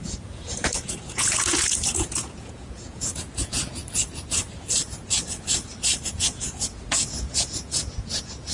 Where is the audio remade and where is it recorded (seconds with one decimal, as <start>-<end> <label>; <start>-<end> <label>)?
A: 0.0-3.8 remade; 3.8-6.1 recorded; 6.1-8.5 remade